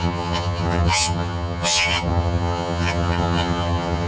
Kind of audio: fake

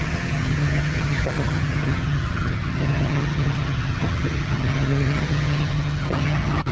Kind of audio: fake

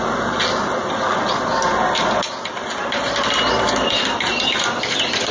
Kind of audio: real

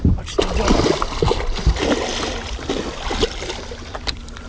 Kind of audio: real